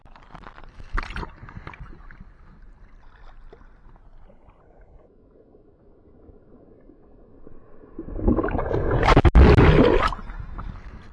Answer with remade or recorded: recorded